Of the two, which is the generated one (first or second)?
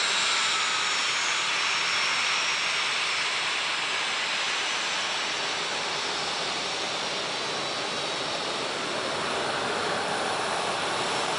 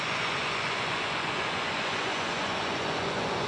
second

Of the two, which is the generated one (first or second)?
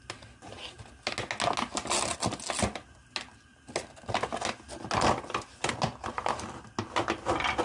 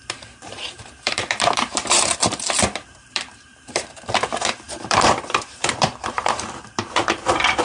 second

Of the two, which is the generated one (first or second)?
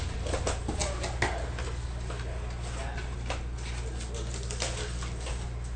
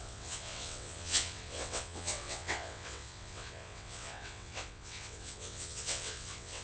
second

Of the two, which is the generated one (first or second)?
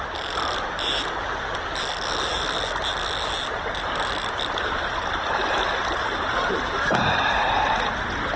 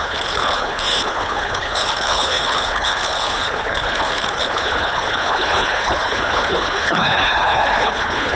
second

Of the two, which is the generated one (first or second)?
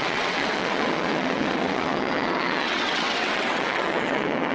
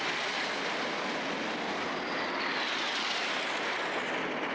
first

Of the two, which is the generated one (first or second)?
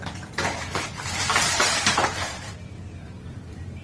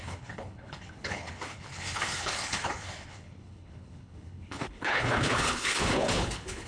second